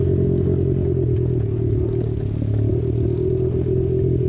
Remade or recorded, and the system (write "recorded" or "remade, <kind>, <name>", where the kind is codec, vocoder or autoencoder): recorded